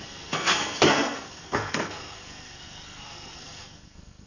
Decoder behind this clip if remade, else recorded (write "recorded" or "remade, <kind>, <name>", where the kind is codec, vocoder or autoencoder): remade, codec, SNAC